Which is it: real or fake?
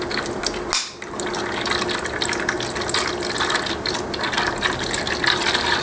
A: real